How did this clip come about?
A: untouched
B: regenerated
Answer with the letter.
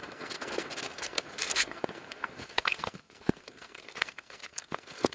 B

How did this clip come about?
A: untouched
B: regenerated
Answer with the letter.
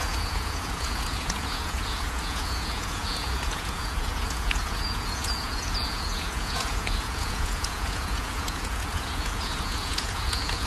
B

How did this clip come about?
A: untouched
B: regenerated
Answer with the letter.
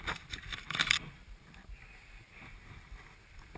A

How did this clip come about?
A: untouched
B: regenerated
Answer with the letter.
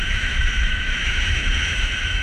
B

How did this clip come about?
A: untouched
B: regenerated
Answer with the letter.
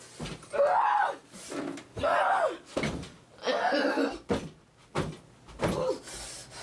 A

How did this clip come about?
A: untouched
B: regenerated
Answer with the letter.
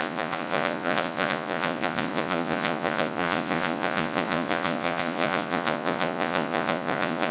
B